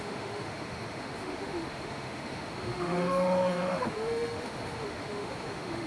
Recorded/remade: remade